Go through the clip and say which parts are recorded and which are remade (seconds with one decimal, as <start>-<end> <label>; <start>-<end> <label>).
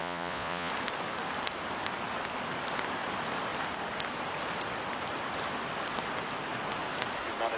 0.0-0.7 remade; 0.7-7.6 recorded